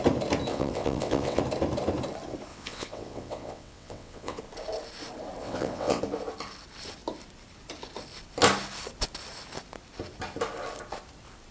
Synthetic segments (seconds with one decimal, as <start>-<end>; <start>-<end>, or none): 0.5-1.4; 2.5-4.4; 5.4-6.0